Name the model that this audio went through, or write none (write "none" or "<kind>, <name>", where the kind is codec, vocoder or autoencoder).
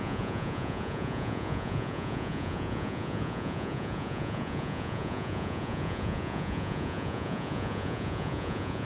vocoder, Vocos